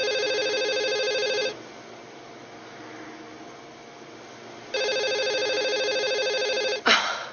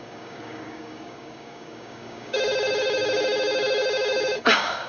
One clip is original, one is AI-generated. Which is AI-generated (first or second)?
second